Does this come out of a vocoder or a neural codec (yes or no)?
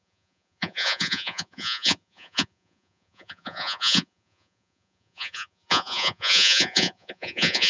yes